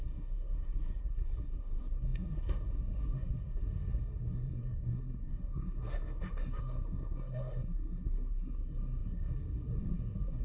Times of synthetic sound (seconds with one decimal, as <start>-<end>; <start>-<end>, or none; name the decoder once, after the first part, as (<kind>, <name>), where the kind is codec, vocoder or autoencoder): 0.0-10.4 (codec, SNAC)

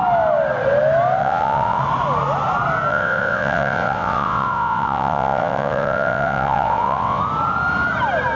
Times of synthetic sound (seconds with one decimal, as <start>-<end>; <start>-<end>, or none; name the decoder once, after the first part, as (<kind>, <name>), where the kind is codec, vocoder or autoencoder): 1.2-1.8 (vocoder, WaveNeXt); 2.9-7.2